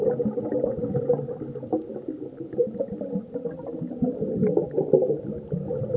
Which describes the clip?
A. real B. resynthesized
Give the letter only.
A